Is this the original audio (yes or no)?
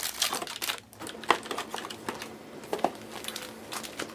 yes